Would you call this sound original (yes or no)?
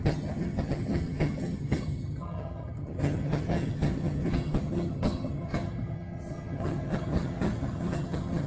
no